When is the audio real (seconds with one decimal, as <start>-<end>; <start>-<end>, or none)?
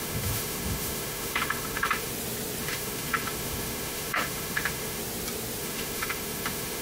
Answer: 2.1-2.6; 5.0-5.6